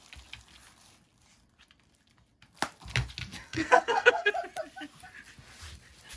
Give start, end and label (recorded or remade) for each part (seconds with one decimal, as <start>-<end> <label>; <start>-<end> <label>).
0.0-3.4 recorded; 3.4-4.3 remade; 4.3-6.2 recorded

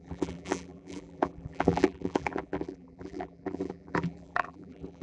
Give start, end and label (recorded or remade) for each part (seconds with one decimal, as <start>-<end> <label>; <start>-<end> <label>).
0.0-5.0 remade

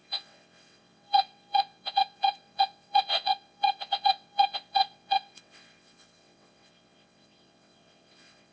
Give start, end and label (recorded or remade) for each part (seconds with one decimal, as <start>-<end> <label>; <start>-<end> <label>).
0.0-8.5 remade

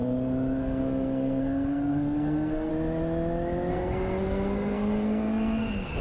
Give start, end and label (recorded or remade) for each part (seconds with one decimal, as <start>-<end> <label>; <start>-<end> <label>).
0.0-0.6 recorded; 0.6-2.7 remade; 2.7-3.7 recorded; 3.7-6.0 remade

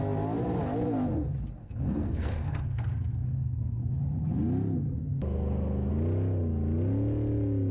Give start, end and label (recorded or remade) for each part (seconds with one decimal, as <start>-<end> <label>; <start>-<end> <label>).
0.0-1.6 recorded; 1.6-4.0 remade; 4.0-5.0 recorded; 5.0-5.9 remade; 5.9-7.7 recorded

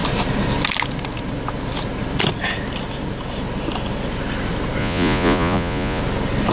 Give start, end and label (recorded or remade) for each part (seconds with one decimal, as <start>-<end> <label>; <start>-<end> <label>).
0.0-4.8 recorded; 4.8-6.0 remade; 6.0-6.5 recorded

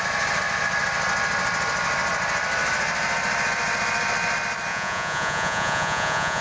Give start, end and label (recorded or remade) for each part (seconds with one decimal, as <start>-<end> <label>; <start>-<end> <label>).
0.0-4.7 recorded; 4.7-6.4 remade

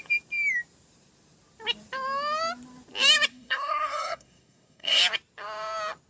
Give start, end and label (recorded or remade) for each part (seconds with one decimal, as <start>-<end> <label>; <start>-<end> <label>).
0.0-3.3 recorded; 3.3-5.0 remade; 5.0-6.1 recorded